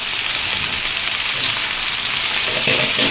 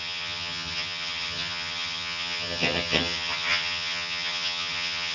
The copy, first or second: second